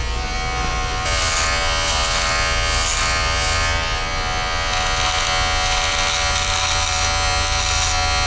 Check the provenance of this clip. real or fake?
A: real